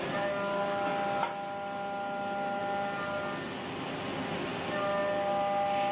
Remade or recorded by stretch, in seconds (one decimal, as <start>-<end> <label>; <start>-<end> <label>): 0.0-5.9 recorded